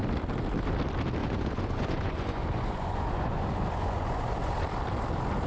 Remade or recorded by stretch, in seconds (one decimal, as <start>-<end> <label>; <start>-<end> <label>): 0.0-1.2 recorded; 1.2-4.5 remade; 4.5-5.5 recorded

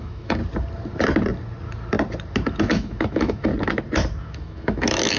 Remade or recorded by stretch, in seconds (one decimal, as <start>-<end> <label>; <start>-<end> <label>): 0.0-0.4 remade; 0.4-2.6 recorded; 2.6-3.5 remade; 3.5-4.3 recorded; 4.3-5.2 remade

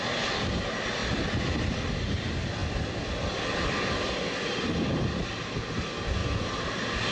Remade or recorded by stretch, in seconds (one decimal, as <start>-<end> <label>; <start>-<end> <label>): 0.0-1.0 recorded; 1.0-2.0 remade; 2.0-2.6 recorded; 2.6-5.1 remade; 5.1-7.1 recorded

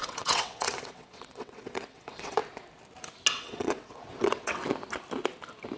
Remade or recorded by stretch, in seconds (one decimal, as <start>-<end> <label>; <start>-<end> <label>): 0.0-2.4 remade; 2.4-3.3 recorded; 3.3-4.6 remade; 4.6-5.8 recorded

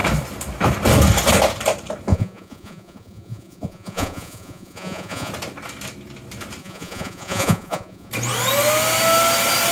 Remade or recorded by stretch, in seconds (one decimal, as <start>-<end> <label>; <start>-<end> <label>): 0.0-2.1 recorded; 2.1-5.3 remade; 5.3-6.6 recorded; 6.6-8.1 remade; 8.1-9.7 recorded

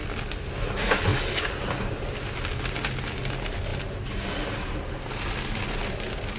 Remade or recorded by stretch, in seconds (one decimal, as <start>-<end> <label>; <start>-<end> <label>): 0.0-6.4 recorded

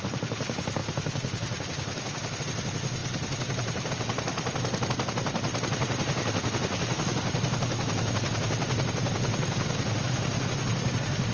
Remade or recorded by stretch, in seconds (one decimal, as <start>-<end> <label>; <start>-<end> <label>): 0.0-4.3 remade; 4.3-4.9 recorded; 4.9-11.3 remade

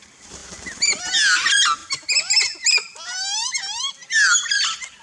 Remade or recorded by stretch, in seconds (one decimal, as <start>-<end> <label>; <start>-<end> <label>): 0.0-5.0 recorded